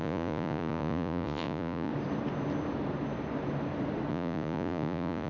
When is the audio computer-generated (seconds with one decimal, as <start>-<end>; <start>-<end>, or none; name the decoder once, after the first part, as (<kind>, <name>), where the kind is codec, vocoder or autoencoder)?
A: 0.0-1.9 (vocoder, Vocos); 4.1-5.3